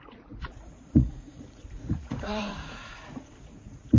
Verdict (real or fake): fake